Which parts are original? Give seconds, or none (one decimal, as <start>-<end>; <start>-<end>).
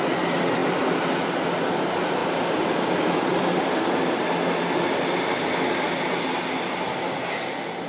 0.0-7.9